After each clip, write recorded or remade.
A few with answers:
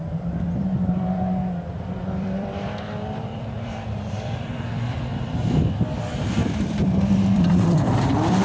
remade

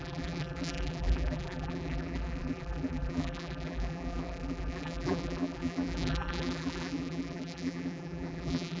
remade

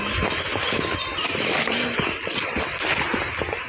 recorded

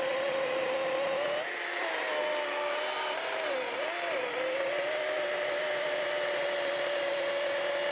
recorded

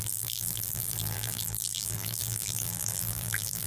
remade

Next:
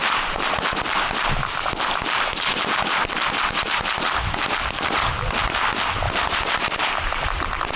remade